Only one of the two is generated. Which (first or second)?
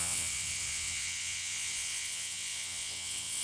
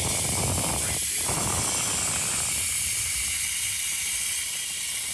first